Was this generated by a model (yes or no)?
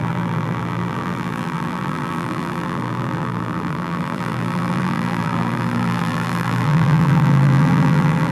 yes